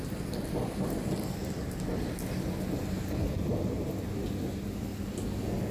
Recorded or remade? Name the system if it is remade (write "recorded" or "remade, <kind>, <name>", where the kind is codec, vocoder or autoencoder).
recorded